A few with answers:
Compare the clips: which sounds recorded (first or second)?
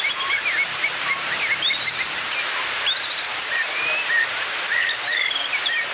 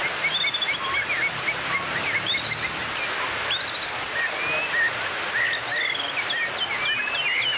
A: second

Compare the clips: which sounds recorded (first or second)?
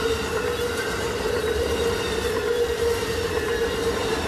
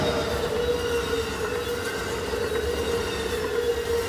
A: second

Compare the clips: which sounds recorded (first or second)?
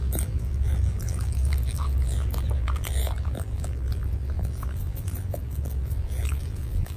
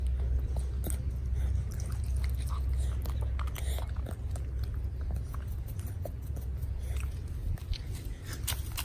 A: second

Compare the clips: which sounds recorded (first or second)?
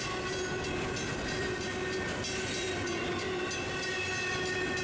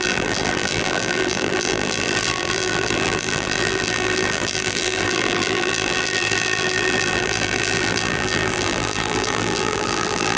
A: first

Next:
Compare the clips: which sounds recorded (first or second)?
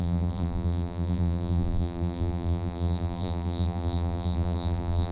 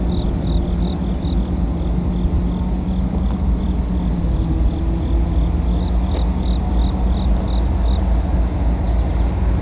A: second